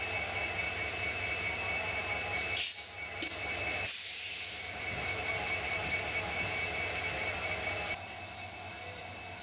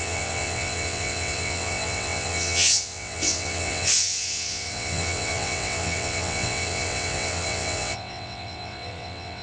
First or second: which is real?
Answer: first